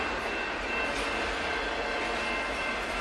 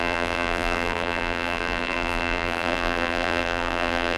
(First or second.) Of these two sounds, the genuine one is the first